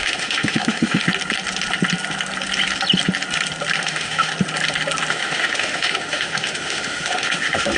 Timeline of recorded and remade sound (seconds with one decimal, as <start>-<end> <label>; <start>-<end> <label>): 0.0-1.0 remade; 1.0-3.8 recorded; 3.8-4.3 remade; 4.3-5.1 recorded; 5.1-7.8 remade